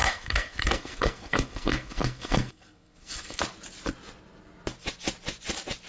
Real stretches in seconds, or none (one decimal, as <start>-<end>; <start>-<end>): 3.4-5.9

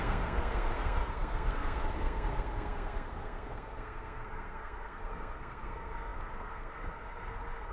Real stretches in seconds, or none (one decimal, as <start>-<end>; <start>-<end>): none